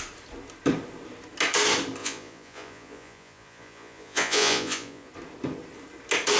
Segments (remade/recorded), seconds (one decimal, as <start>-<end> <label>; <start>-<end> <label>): 0.0-2.0 recorded; 2.0-5.1 remade; 5.1-6.4 recorded

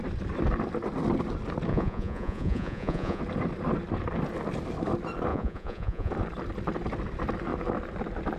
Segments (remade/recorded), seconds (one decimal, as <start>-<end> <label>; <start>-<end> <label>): 0.0-1.7 recorded; 1.7-3.2 remade; 3.2-5.3 recorded; 5.3-6.1 remade; 6.1-8.4 recorded